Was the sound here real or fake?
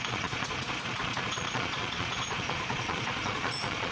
fake